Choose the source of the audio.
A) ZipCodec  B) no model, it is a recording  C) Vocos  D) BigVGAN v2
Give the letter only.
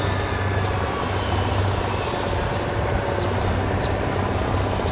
B